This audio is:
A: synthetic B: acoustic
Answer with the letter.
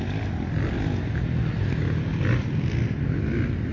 B